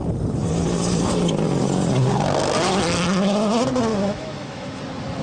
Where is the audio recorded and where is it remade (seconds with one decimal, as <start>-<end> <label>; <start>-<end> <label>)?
0.0-3.9 recorded; 3.9-4.8 remade; 4.8-5.2 recorded